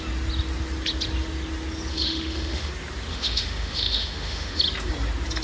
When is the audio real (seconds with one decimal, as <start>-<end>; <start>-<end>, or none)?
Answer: 0.0-1.9; 2.7-3.1; 4.6-5.4